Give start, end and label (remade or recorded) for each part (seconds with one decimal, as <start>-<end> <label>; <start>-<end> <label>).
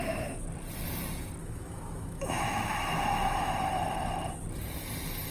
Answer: 0.0-1.4 recorded; 1.4-3.5 remade; 3.5-5.3 recorded